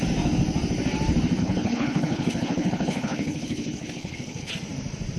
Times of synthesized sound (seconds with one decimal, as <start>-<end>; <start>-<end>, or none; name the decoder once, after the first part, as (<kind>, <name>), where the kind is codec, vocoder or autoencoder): 1.4-4.5 (codec, HILCodec)